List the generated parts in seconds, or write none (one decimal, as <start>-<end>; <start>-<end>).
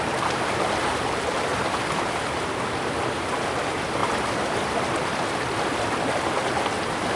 none